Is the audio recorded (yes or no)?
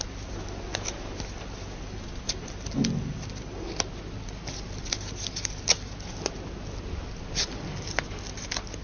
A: yes